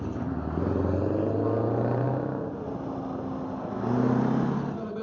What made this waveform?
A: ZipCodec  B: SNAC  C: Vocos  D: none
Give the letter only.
D